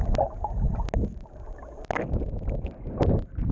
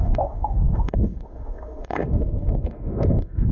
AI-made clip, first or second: second